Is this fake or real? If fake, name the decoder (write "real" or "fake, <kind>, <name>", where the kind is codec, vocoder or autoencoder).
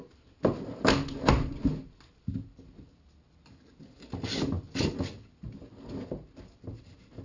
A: real